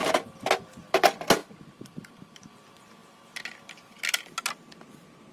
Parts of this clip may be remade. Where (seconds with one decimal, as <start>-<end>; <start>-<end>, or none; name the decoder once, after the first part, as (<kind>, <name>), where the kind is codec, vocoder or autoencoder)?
0.0-0.5 (vocoder, BigVGAN v2); 1.4-2.5